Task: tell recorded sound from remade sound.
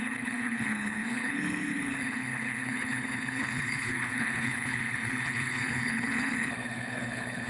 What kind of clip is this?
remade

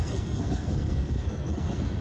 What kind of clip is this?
remade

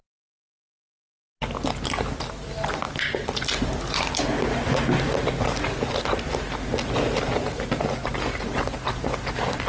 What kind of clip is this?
recorded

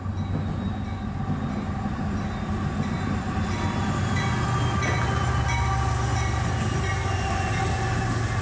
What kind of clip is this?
recorded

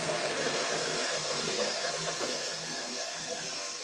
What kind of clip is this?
remade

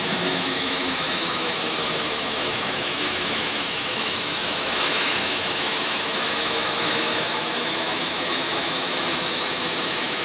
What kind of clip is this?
remade